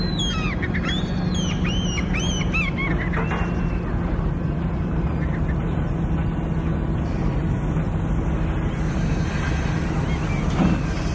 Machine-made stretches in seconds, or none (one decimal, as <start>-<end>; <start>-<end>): none